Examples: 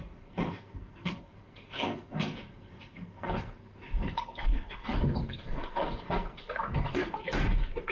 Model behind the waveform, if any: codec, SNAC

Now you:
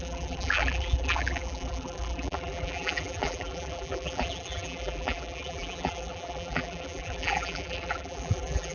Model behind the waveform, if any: vocoder, BigVGAN v2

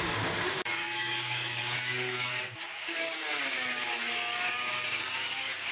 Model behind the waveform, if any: codec, DAC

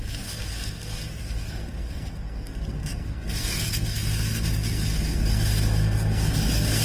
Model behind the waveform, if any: codec, SNAC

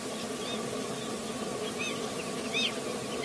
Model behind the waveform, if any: none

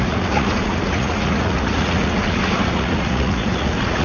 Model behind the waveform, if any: vocoder, Vocos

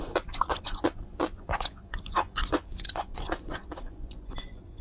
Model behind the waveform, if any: vocoder, Vocos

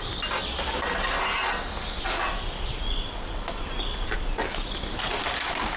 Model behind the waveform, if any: none